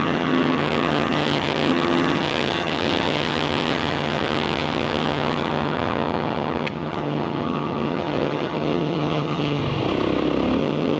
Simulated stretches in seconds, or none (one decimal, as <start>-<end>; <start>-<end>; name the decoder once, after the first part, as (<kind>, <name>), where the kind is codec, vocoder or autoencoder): 0.0-9.6 (vocoder, HiFi-GAN); 10.6-11.0